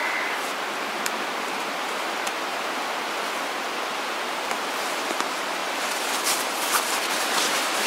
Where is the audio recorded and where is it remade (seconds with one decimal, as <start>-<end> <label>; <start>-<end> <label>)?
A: 0.0-0.9 recorded; 0.9-2.5 remade; 2.5-3.9 recorded; 3.9-7.9 remade